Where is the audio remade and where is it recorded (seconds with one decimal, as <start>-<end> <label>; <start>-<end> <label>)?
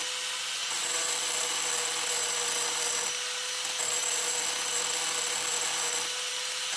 0.0-0.6 recorded; 0.6-1.1 remade; 1.1-6.8 recorded